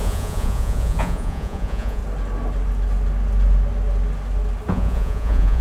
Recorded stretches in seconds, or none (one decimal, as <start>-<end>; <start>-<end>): 2.0-4.7

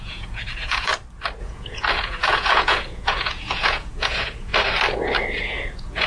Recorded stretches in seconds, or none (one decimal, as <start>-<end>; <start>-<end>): 0.9-1.4; 4.5-5.4

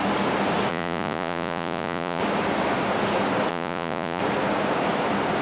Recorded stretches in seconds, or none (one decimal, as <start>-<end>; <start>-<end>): 0.0-0.7; 2.2-3.5; 4.2-5.4

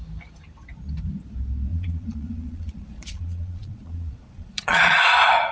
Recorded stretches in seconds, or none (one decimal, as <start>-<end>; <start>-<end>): 0.0-1.7; 5.0-5.5

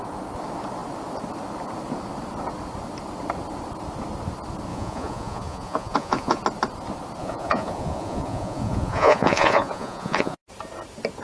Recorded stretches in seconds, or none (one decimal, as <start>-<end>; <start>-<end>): 0.0-4.7; 6.4-7.2; 10.4-11.2

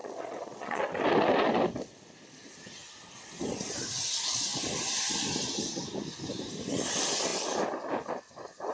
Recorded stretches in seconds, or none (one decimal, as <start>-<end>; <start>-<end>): 0.8-8.7